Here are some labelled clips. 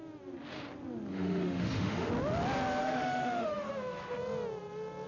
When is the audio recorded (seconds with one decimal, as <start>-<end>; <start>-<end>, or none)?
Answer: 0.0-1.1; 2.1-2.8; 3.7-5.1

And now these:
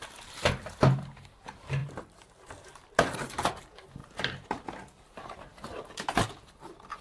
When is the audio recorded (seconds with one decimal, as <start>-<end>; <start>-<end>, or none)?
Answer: none

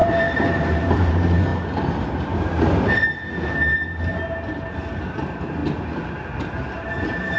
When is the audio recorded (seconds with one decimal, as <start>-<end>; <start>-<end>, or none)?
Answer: 1.1-1.5; 2.1-7.4

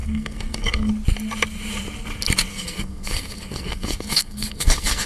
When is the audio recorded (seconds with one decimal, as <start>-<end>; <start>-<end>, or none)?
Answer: 0.9-2.5